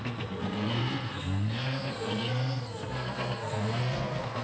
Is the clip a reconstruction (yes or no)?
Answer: yes